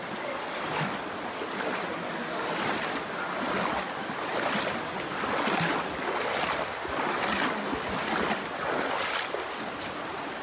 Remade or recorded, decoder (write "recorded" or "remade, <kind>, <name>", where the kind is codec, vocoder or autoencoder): recorded